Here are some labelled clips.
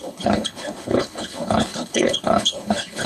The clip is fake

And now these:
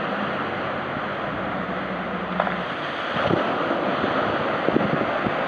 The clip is real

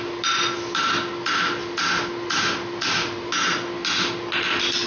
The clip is real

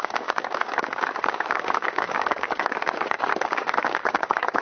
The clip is fake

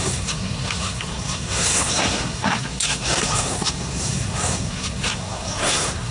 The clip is fake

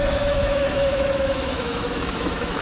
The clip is fake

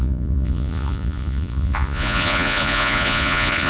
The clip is fake